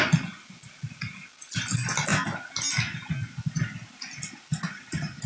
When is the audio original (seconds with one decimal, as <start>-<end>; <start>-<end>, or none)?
0.0-5.3

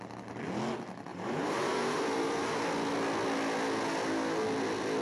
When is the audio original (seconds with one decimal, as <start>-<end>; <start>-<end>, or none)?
0.0-1.1; 2.6-5.0